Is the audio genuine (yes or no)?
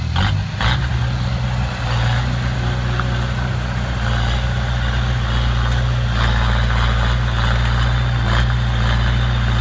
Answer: yes